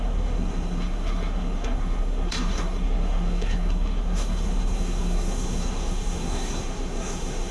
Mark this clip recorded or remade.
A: remade